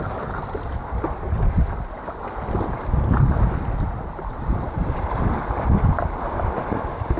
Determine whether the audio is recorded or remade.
recorded